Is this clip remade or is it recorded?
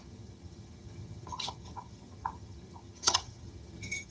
remade